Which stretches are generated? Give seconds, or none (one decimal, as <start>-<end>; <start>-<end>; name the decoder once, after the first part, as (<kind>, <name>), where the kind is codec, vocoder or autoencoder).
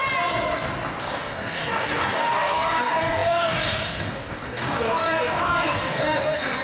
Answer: 1.0-6.6 (codec, DAC)